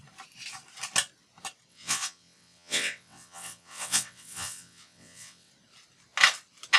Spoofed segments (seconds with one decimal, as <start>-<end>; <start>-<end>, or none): 1.7-5.5